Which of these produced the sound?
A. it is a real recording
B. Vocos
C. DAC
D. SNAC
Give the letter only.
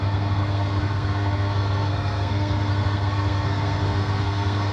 D